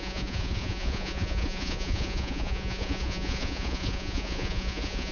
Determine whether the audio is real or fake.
fake